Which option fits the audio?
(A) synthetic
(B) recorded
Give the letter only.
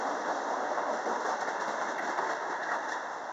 B